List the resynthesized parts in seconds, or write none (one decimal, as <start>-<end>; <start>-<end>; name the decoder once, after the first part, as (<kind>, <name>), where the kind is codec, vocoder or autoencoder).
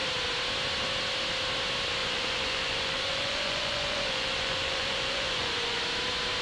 2.0-5.8 (vocoder, Vocos)